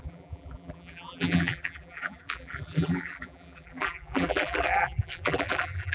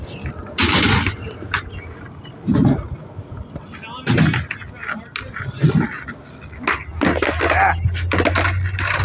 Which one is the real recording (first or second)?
second